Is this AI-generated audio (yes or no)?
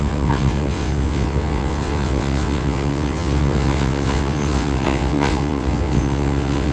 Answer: yes